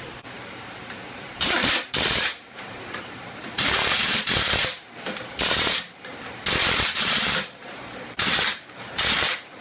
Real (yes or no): no